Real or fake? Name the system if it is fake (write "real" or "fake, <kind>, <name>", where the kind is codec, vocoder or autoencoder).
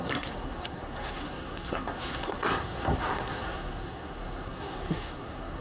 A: fake, codec, SNAC